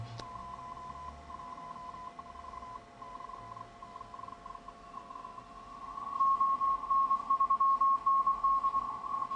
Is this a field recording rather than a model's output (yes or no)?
yes